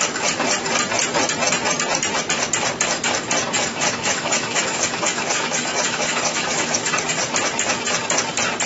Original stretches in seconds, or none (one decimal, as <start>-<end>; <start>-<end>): 0.0-3.7; 6.9-8.7